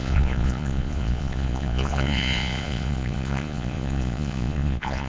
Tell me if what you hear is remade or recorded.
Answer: remade